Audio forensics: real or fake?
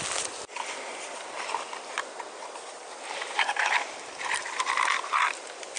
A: fake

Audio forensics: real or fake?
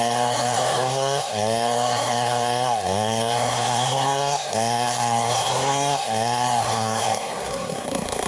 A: fake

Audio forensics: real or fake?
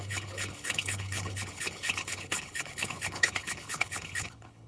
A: fake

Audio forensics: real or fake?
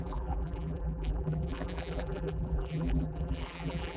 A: fake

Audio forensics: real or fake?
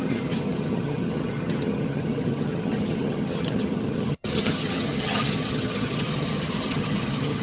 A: fake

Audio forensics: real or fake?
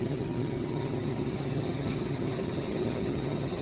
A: fake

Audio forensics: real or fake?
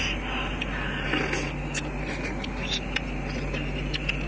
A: real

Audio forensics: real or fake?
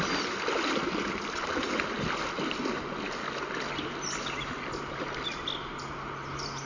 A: real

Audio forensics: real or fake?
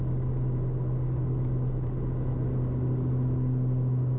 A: real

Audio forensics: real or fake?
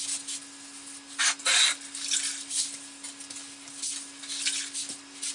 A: real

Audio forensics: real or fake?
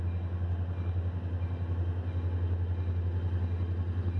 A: real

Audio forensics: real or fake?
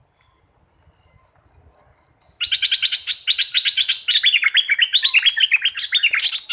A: real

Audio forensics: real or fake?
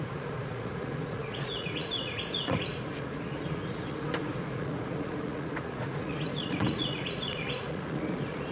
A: fake